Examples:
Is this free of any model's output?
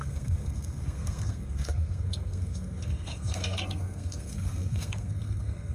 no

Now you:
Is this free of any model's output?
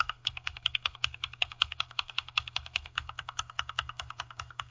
no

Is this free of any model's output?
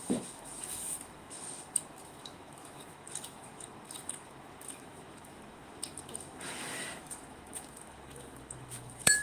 no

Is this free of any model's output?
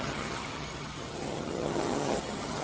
no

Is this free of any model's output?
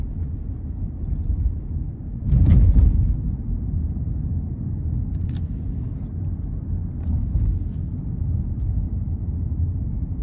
yes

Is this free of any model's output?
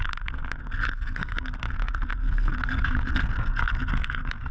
no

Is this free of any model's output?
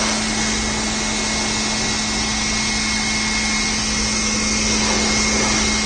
yes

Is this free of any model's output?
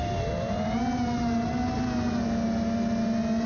yes